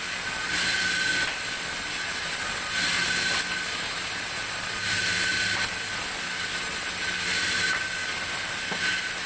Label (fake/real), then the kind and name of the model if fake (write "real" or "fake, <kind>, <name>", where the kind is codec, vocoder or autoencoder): real